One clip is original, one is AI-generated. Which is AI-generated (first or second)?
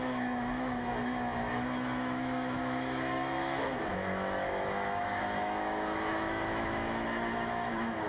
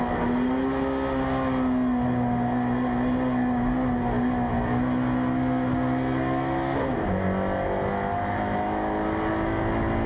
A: first